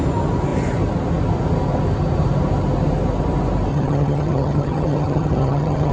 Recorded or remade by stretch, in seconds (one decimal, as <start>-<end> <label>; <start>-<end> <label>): 0.0-3.7 recorded; 3.7-5.9 remade